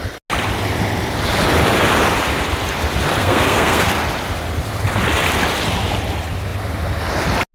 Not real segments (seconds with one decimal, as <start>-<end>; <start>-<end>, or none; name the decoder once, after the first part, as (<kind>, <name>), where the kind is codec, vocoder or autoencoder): 3.2-3.9 (codec, SNAC)